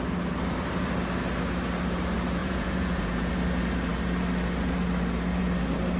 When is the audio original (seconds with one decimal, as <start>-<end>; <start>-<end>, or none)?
0.0-2.4; 3.3-6.0

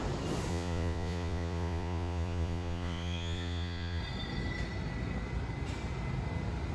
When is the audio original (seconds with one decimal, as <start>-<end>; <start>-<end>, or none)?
0.0-0.5; 4.0-6.7

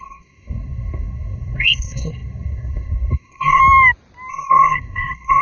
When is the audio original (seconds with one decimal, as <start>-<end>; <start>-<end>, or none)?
3.6-4.3

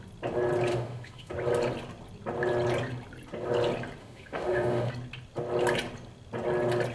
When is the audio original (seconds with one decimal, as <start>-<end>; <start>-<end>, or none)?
0.0-0.7; 1.3-4.0; 4.9-6.9

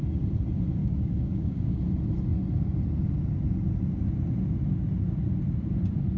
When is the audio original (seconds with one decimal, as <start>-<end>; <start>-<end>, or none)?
0.0-0.8; 1.8-6.2